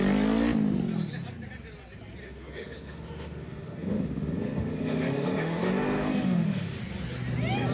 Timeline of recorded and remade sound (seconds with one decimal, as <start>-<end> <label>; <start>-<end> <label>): 0.0-2.2 recorded; 2.2-6.8 remade; 6.8-7.7 recorded